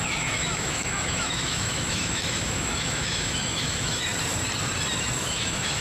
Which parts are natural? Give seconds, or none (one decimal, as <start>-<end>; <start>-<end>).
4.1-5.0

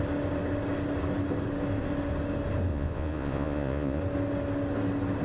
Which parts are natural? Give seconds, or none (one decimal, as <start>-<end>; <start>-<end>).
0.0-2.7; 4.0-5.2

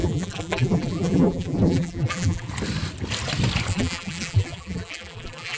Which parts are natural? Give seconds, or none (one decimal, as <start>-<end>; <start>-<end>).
2.5-3.7

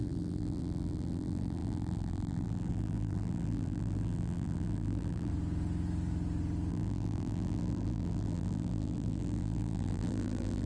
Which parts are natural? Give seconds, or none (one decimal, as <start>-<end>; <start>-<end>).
5.3-6.7

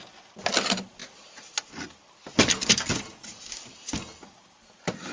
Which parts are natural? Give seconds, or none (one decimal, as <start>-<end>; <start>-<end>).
0.0-5.1

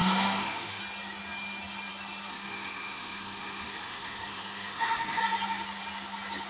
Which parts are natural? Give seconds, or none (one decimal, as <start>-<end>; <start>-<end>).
0.8-2.3; 5.2-6.5

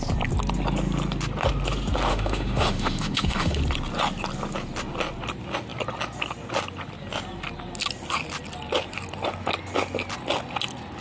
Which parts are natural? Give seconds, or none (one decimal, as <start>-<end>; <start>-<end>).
0.0-2.1; 3.6-11.0